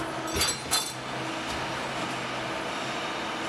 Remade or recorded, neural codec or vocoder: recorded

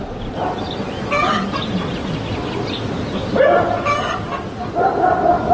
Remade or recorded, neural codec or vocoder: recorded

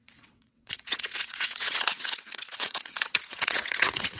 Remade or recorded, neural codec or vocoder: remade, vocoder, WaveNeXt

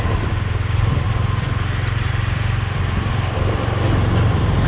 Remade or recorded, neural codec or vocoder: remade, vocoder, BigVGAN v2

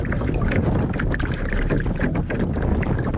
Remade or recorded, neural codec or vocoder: recorded